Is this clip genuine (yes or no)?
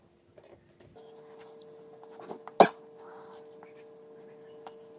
yes